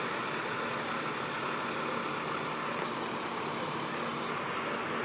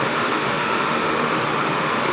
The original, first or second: first